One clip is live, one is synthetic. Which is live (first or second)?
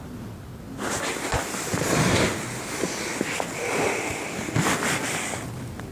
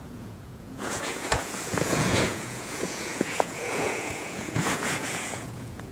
first